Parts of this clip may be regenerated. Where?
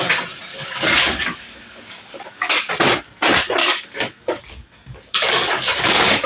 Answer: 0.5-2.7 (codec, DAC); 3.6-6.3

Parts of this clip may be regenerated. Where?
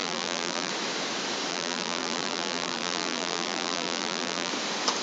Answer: 0.0-0.7 (vocoder, BigVGAN v2); 1.5-4.5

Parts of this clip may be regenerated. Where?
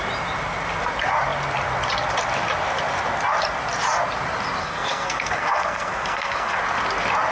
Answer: 4.6-6.6 (codec, SNAC)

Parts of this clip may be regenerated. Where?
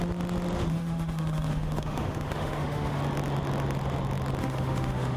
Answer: 0.7-3.0 (autoencoder, DAC-VAE); 4.4-5.2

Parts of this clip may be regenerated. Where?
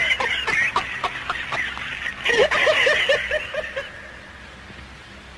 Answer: none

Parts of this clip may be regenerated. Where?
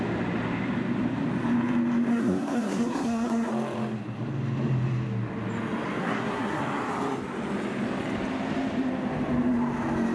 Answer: 2.1-3.5 (codec, SNAC); 6.0-6.6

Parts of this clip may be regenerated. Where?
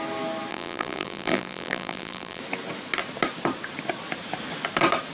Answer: 0.5-2.4 (vocoder, BigVGAN v2)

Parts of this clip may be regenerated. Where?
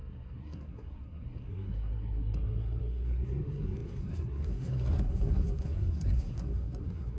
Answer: 0.0-7.2 (codec, SNAC)